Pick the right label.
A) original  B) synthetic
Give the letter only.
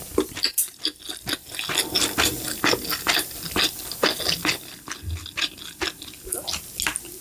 A